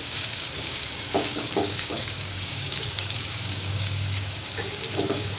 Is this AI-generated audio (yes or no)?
yes